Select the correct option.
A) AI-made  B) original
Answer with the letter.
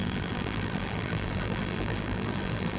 A